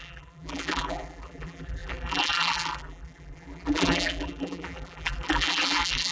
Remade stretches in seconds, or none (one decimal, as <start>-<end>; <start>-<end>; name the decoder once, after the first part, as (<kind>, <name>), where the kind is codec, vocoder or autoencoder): 0.0-6.1 (vocoder, BigVGAN v2)